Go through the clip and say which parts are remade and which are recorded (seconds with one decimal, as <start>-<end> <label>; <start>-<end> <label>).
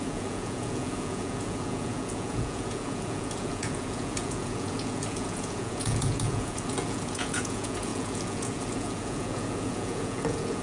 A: 0.0-10.6 remade